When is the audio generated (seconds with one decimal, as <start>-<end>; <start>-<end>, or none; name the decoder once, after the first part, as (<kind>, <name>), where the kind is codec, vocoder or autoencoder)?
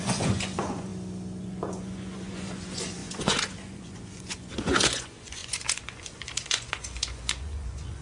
0.0-0.9 (vocoder, Vocos); 1.4-8.0